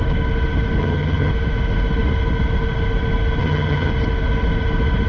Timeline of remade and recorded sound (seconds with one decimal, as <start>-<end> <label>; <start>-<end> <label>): 0.0-0.8 recorded; 0.8-1.3 remade; 1.3-3.4 recorded; 3.4-3.9 remade; 3.9-5.1 recorded